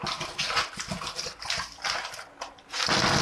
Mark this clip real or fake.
real